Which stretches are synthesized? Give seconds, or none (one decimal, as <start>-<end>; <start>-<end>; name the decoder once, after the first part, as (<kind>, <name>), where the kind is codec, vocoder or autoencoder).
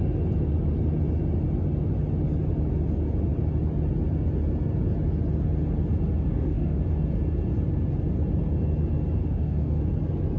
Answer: 6.3-6.8 (autoencoder, DAC-VAE); 9.2-9.8